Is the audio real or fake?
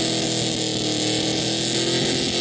real